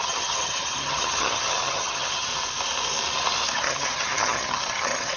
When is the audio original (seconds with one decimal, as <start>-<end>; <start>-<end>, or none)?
2.3-3.6